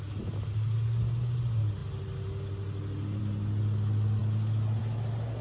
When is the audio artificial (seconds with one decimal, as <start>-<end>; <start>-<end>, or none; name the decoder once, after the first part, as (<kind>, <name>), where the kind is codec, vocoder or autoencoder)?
none